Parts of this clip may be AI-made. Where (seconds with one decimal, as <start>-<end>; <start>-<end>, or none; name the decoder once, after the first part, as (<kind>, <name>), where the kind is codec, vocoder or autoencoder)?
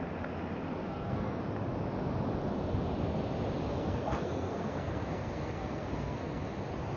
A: 0.8-1.4 (codec, SNAC); 3.7-6.4